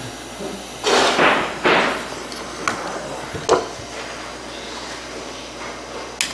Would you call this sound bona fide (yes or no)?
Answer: yes